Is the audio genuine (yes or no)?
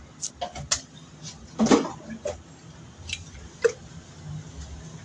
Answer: yes